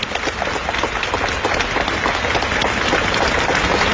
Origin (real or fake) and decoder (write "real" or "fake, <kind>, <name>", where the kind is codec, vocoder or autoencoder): real